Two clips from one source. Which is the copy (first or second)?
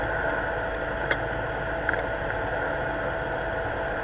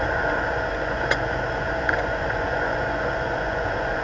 second